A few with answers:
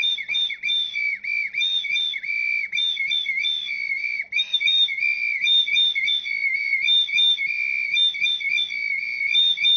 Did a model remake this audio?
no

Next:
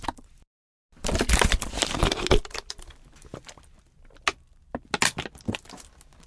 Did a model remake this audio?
no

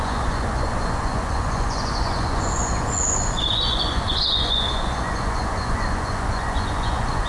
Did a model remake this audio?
yes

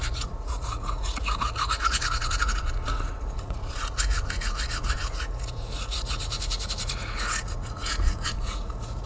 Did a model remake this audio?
yes